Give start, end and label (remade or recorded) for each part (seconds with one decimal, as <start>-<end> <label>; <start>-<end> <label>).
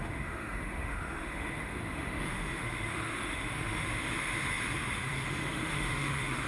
0.0-6.5 remade